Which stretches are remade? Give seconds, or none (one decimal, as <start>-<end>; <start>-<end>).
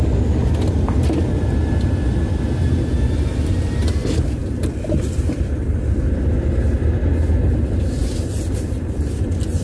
8.0-9.1